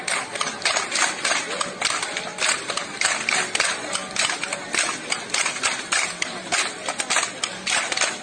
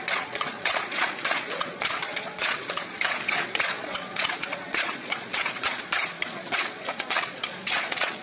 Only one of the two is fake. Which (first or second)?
second